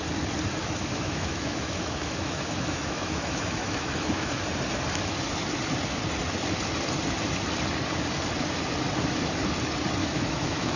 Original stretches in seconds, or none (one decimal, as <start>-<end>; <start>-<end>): 0.0-0.6; 4.4-10.0